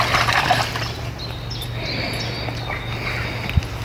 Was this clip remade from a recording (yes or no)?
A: no